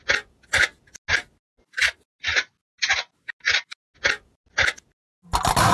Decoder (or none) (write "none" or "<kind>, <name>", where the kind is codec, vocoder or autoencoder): none